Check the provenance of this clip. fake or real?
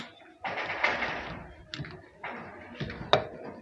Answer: real